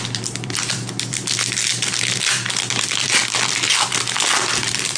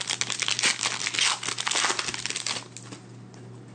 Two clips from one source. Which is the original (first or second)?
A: second